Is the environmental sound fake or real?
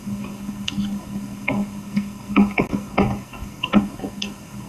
fake